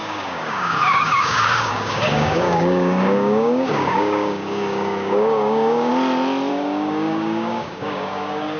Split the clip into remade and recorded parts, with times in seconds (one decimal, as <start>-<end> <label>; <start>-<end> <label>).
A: 0.0-5.9 remade; 5.9-6.5 recorded; 6.5-8.6 remade